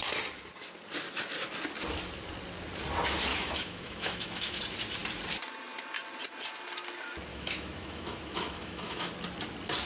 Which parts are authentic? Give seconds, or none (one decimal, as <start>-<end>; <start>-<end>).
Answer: 0.0-3.3; 4.6-7.3; 9.1-9.9